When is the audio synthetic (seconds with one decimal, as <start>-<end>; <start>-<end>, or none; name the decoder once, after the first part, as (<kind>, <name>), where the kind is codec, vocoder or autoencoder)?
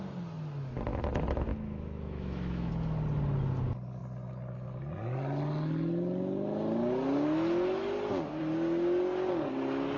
1.5-2.7 (autoencoder, DAC-VAE)